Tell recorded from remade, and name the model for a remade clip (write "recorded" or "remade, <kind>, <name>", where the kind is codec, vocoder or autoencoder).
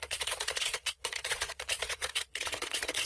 remade, vocoder, Vocos